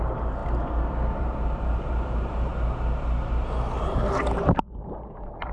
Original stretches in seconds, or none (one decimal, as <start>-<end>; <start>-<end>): 0.4-1.2; 2.5-3.8